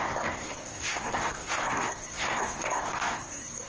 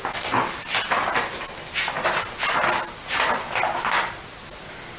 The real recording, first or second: second